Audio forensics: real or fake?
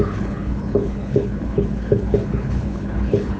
fake